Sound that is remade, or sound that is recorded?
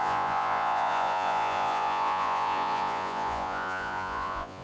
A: remade